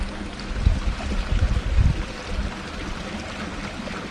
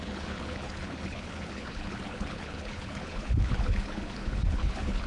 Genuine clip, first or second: first